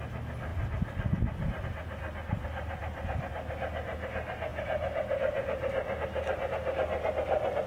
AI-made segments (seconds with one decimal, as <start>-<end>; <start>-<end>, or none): none